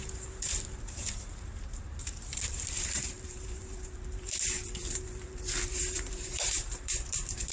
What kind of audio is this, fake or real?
fake